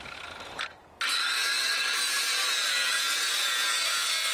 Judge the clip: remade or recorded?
recorded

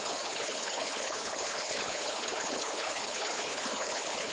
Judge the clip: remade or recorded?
remade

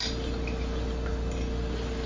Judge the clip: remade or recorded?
recorded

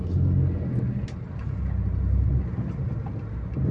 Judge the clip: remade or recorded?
recorded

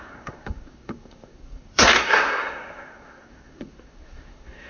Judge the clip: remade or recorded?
remade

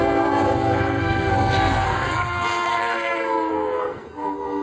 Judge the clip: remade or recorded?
remade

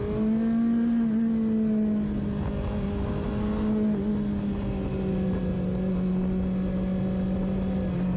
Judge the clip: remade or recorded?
recorded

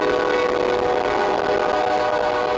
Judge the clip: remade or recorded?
recorded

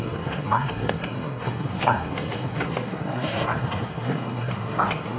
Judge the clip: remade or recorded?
remade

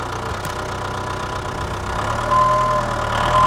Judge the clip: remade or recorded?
recorded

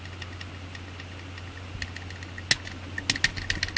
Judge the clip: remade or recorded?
recorded